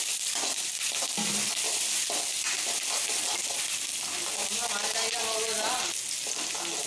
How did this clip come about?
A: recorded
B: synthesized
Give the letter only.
A